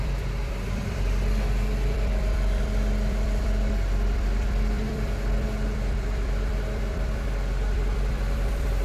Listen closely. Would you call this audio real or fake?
fake